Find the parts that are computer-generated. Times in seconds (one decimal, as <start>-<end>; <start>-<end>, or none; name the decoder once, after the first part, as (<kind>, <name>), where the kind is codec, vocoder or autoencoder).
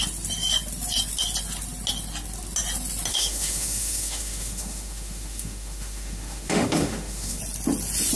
3.1-7.4 (autoencoder, DAC-VAE)